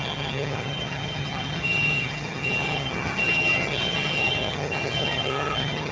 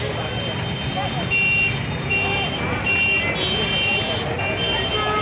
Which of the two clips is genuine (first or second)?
second